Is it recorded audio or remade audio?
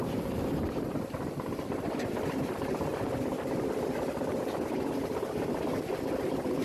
remade